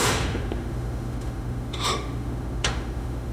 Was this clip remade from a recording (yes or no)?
yes